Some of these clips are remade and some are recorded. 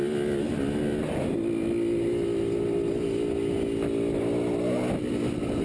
recorded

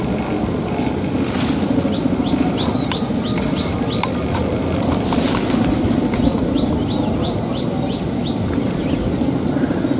recorded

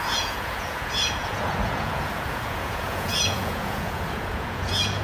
remade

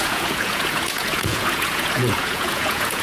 remade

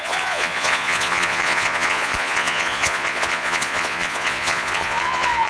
remade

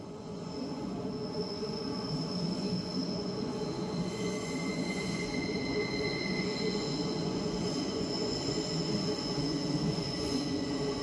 remade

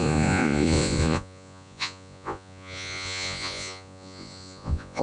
remade